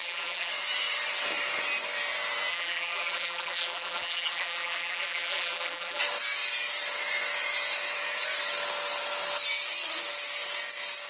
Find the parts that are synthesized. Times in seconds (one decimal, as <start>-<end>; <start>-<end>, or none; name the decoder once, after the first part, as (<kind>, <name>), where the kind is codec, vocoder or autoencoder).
0.0-0.5 (vocoder, BigVGAN v2); 2.5-6.0

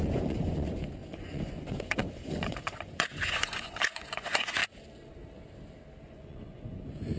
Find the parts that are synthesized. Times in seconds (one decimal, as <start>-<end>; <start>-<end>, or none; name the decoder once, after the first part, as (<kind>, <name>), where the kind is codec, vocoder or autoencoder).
0.0-4.6 (vocoder, Vocos); 6.0-7.2

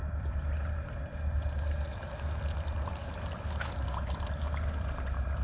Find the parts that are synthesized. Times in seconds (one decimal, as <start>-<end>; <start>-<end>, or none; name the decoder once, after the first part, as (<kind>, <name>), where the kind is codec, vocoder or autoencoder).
none

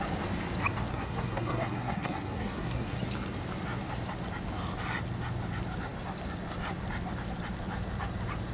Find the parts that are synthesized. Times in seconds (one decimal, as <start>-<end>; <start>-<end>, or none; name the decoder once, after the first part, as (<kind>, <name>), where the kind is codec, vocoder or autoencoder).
0.9-3.0 (codec, SNAC)